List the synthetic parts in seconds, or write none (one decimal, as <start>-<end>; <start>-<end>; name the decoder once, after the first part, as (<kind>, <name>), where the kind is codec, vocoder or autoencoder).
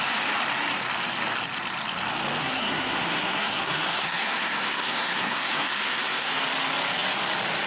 2.4-6.3 (codec, SNAC)